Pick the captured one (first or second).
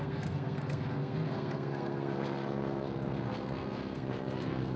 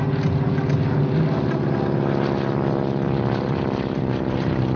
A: second